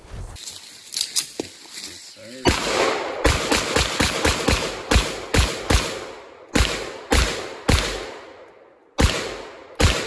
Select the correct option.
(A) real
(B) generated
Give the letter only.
A